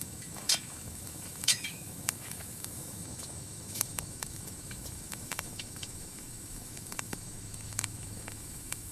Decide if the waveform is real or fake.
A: fake